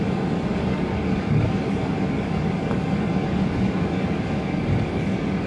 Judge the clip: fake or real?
fake